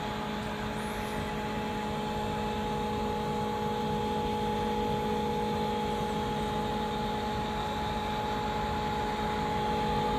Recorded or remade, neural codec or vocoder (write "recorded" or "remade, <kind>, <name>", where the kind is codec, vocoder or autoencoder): recorded